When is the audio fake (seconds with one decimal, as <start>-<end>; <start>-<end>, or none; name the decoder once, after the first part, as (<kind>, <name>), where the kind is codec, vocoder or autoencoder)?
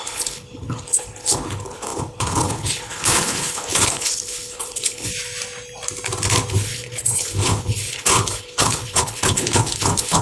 0.0-5.1 (codec, HILCodec); 6.5-10.2